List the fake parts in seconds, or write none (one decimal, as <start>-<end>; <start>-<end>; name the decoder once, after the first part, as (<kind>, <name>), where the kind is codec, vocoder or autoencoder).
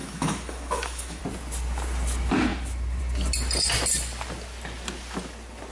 0.0-1.2 (autoencoder, DAC-VAE)